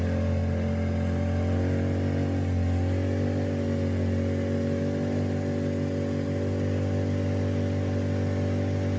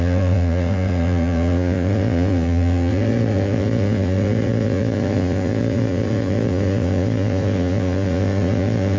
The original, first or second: first